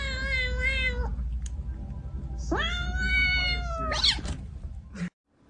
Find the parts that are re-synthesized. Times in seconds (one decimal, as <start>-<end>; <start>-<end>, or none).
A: none